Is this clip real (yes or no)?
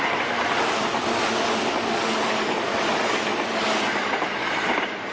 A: yes